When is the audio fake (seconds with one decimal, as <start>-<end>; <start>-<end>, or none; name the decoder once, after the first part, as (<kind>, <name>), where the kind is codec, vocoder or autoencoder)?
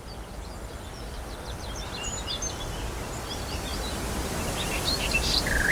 none